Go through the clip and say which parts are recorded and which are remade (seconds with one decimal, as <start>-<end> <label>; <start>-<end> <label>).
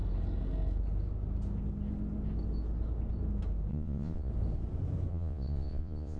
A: 0.0-3.7 recorded; 3.7-4.3 remade; 4.3-5.1 recorded; 5.1-6.2 remade